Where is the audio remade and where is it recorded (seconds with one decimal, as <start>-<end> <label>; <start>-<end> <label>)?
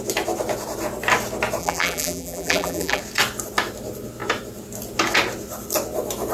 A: 0.0-1.6 recorded; 1.6-3.0 remade; 3.0-6.3 recorded